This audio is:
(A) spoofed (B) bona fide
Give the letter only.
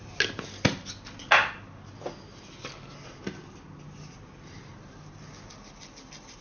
B